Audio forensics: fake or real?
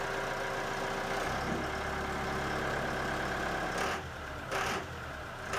real